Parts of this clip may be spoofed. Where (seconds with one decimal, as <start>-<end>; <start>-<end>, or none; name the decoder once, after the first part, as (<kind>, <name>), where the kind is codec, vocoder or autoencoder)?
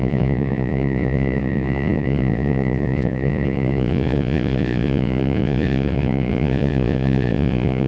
0.0-7.9 (vocoder, Vocos)